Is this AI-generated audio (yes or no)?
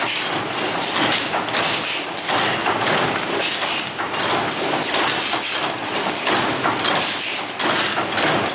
no